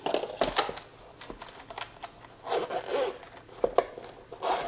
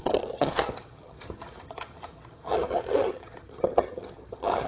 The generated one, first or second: second